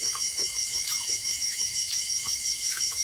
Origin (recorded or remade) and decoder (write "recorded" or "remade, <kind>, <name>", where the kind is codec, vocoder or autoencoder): remade, autoencoder, DAC-VAE